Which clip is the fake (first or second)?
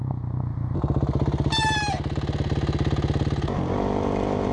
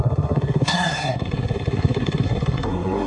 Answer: second